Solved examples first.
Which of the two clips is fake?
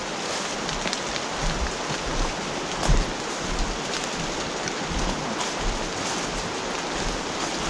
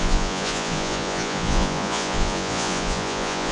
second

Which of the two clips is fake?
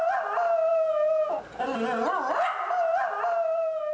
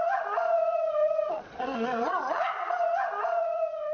second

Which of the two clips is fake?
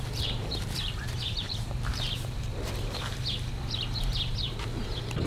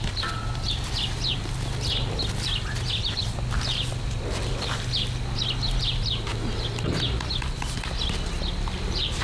first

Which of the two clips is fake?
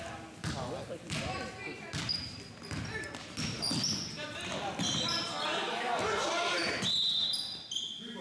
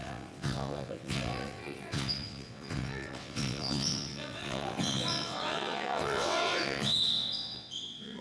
second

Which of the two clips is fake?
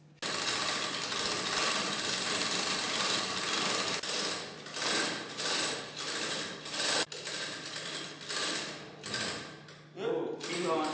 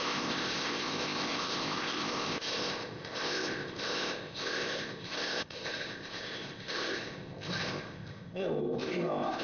second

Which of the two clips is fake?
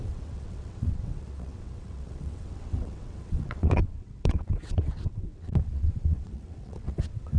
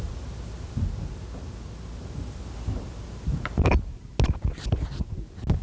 first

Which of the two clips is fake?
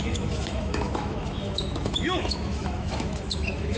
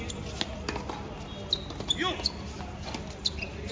first